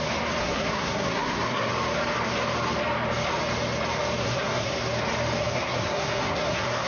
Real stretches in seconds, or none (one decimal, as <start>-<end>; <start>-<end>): 0.0-0.4; 1.7-4.2; 4.7-5.4

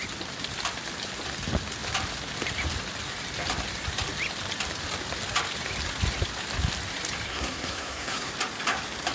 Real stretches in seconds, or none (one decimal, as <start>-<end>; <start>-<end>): 0.0-7.3; 8.3-9.1

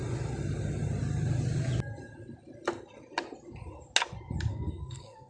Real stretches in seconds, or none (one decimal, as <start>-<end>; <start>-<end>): 0.0-4.5

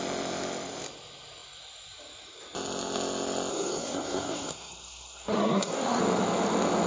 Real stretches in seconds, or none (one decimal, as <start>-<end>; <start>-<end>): 0.0-3.5; 6.0-6.9

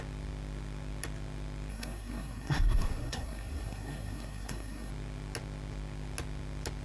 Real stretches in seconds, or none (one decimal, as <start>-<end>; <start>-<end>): 0.0-1.7; 4.9-6.8

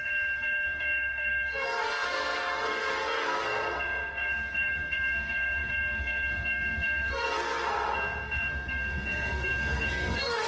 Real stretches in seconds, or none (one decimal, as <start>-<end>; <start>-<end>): none

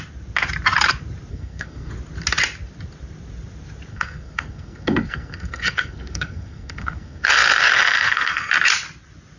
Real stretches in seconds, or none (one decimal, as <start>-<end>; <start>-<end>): 0.0-1.3; 1.9-3.9; 8.5-9.4

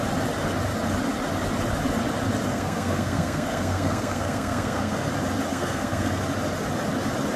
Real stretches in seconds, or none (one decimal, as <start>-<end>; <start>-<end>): 0.0-2.5; 5.1-5.5; 6.2-7.4